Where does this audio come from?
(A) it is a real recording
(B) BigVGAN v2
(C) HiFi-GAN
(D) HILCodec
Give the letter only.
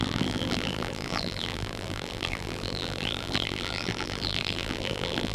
B